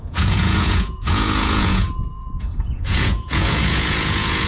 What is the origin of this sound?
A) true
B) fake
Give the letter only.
B